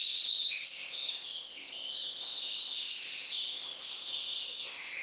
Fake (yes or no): yes